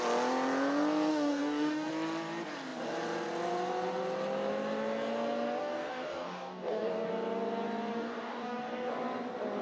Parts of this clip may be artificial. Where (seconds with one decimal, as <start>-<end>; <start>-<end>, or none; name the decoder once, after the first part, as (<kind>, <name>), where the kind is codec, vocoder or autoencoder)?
1.1-1.9 (codec, DAC); 5.6-7.1; 7.9-8.9